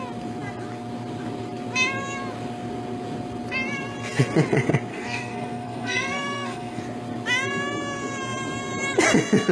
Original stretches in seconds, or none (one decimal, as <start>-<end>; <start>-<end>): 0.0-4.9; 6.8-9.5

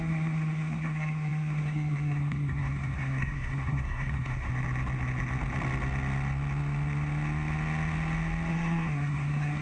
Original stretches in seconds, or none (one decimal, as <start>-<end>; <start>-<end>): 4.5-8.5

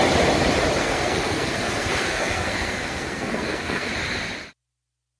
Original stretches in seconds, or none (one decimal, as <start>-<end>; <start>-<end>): 0.0-0.8; 3.9-5.2